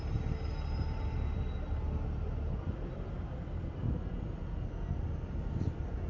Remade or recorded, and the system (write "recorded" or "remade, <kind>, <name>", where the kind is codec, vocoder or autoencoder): recorded